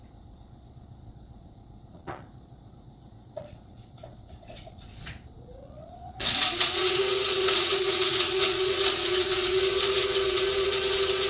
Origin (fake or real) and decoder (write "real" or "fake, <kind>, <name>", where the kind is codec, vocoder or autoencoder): fake, vocoder, Vocos